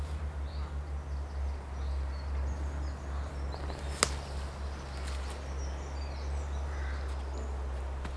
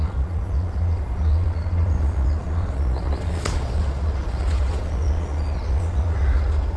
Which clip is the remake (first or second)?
second